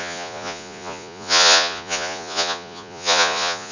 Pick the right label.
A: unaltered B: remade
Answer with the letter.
B